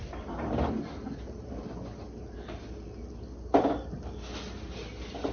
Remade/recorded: recorded